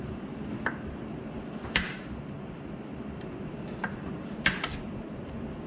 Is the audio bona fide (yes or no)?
yes